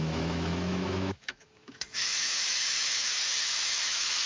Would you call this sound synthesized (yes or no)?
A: yes